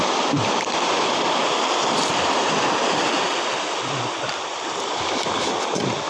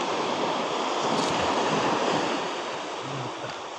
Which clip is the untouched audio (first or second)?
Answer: second